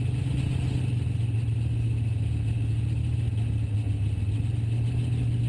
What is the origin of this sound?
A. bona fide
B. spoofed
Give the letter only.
A